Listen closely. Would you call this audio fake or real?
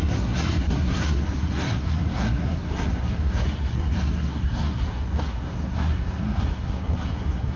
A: fake